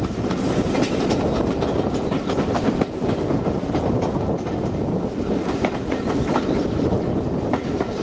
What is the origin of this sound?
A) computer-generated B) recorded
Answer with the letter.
B